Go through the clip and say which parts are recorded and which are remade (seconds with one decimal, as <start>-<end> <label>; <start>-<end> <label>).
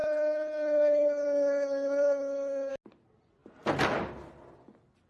0.0-2.7 remade; 2.7-5.1 recorded